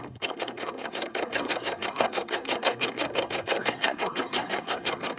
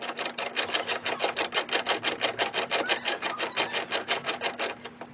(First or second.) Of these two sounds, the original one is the second